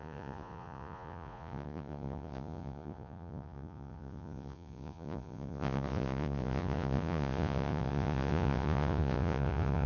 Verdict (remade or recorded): remade